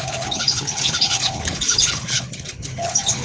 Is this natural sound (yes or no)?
no